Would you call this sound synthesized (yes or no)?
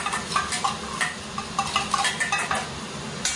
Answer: no